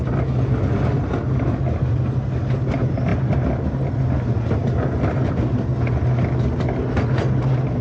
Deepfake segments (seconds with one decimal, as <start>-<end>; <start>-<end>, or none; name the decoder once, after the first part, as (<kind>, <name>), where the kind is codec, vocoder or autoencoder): none